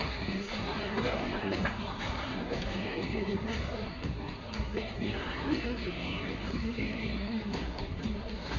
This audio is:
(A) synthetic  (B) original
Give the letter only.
A